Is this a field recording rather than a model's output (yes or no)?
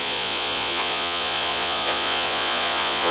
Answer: no